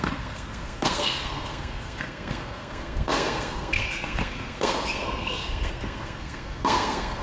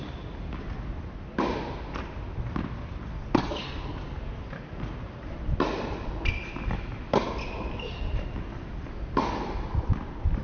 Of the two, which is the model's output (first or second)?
first